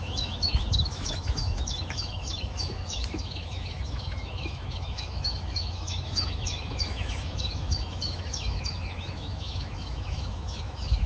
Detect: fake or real fake